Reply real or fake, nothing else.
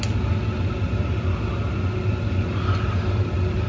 real